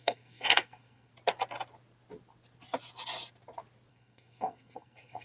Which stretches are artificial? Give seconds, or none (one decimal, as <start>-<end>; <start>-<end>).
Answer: 0.0-1.1; 3.9-5.2